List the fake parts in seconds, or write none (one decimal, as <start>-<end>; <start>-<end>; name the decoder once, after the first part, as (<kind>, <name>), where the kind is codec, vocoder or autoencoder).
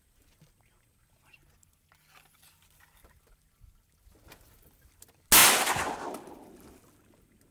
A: none